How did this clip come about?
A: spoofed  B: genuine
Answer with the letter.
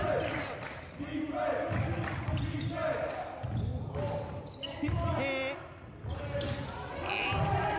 B